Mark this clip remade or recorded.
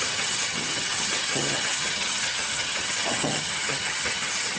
remade